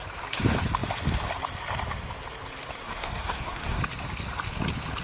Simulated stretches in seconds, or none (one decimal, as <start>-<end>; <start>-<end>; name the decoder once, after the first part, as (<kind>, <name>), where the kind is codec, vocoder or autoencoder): 2.8-3.8 (codec, SNAC)